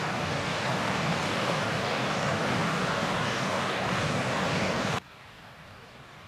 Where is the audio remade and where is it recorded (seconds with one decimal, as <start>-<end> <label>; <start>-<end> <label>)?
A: 0.0-6.3 remade